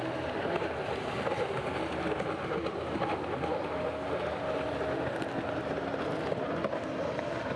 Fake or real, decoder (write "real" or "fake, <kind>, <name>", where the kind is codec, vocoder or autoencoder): real